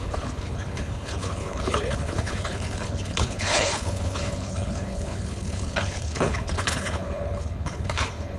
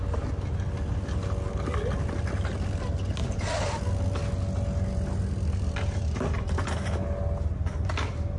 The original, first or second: second